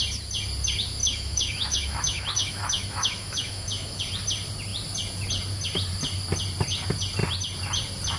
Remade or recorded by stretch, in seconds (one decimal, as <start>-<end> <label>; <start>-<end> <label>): 0.0-1.0 recorded; 1.0-4.0 remade; 4.0-8.2 recorded